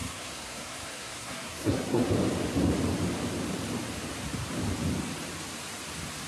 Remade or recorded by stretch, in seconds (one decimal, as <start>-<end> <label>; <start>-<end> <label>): 0.0-2.1 remade; 2.1-6.3 recorded